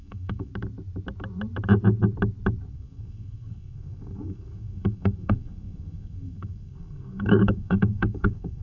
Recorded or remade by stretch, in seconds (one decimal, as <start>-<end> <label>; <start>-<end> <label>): 0.0-0.5 remade; 0.5-2.7 recorded; 2.7-8.6 remade